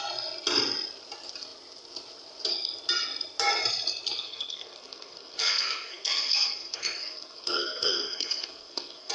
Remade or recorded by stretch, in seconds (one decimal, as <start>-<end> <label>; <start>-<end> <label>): 0.0-4.2 recorded; 4.2-9.1 remade